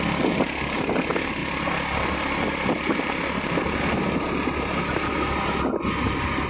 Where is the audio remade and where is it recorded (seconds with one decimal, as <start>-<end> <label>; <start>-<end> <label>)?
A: 0.0-6.5 recorded